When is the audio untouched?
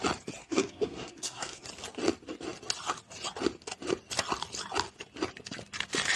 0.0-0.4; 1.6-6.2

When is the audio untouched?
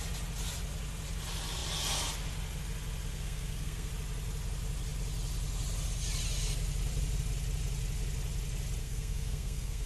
0.0-3.1; 3.9-8.8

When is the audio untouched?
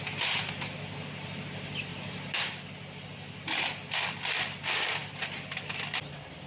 0.0-6.5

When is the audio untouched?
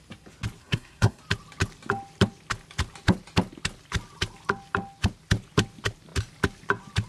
0.0-0.6; 1.2-7.1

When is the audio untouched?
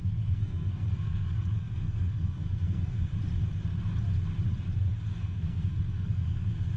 3.1-5.2